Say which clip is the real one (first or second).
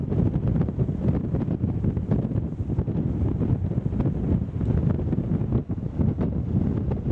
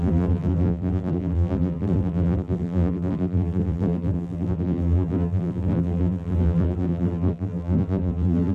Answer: first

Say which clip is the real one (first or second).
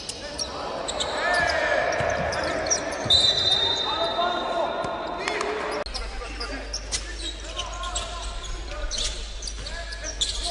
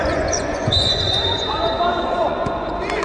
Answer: first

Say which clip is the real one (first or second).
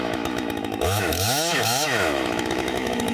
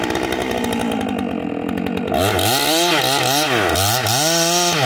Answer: second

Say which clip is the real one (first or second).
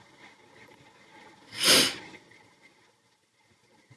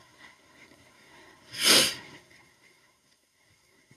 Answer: first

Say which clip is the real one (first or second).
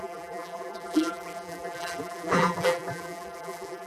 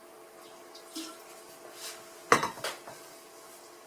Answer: second